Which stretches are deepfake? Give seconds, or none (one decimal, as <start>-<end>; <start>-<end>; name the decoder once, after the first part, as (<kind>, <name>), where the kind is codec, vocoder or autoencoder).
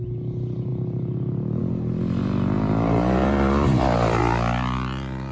3.2-4.2 (vocoder, BigVGAN v2)